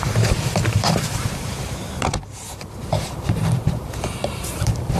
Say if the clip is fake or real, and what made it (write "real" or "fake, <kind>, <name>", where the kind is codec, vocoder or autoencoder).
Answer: fake, vocoder, BigVGAN v2